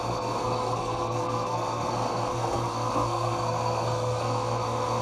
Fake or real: fake